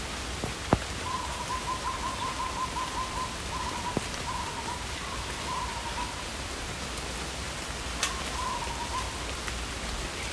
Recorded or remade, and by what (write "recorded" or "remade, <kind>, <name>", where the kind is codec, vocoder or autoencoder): recorded